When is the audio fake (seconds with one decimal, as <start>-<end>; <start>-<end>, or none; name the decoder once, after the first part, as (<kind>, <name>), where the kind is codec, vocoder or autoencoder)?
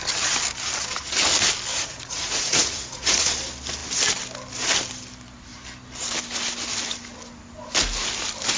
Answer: 1.7-3.3 (vocoder, Vocos)